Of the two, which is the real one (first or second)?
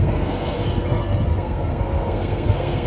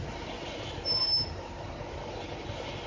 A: second